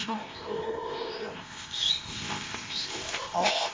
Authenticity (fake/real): fake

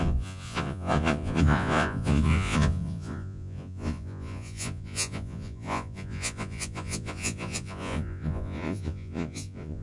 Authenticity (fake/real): fake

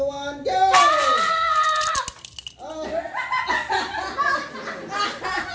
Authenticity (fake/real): real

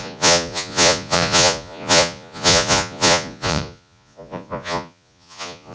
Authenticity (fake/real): fake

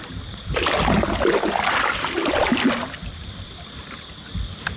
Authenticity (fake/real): real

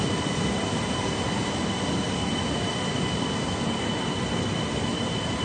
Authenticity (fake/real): real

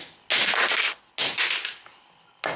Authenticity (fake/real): real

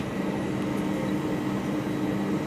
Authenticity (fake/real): real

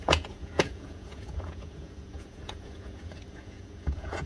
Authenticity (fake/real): fake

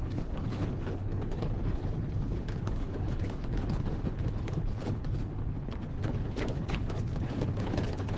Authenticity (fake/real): fake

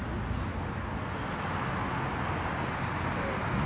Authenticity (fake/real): real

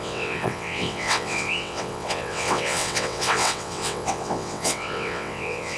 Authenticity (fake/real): fake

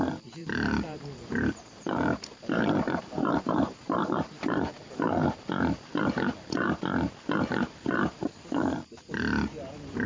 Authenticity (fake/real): fake